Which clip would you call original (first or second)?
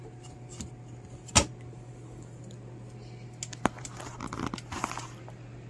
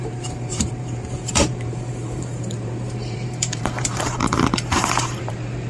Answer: first